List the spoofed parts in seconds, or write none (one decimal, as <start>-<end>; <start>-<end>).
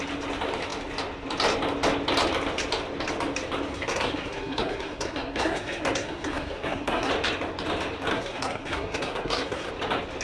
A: 3.7-7.1; 8.1-9.7